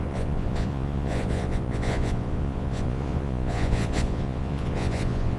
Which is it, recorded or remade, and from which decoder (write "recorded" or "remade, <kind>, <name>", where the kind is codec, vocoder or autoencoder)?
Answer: remade, vocoder, Vocos